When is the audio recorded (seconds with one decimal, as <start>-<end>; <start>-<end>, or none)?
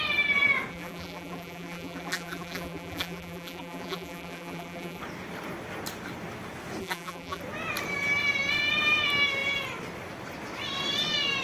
0.0-0.7; 5.0-6.8; 7.4-11.4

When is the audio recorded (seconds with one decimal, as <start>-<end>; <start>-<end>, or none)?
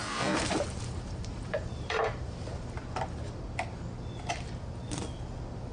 3.4-5.7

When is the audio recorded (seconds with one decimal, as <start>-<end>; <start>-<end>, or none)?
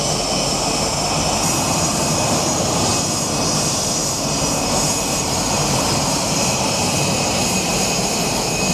2.9-3.5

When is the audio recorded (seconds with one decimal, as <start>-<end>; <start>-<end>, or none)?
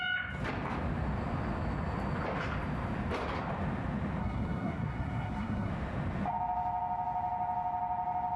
0.0-4.2; 5.7-8.4